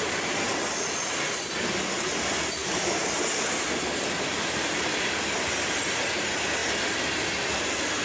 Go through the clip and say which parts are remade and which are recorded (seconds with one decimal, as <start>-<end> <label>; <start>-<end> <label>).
0.0-2.6 recorded; 2.6-3.4 remade; 3.4-4.3 recorded; 4.3-5.2 remade; 5.2-8.0 recorded